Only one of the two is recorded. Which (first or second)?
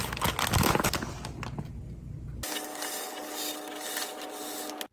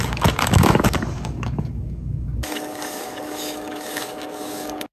first